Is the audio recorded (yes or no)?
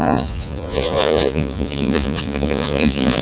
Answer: no